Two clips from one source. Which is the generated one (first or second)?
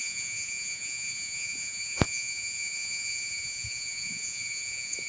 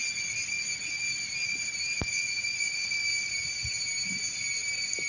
first